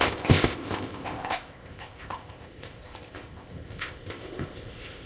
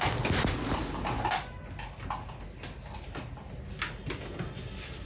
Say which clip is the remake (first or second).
first